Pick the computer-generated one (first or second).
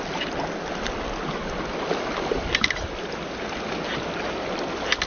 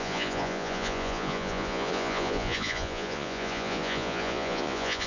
second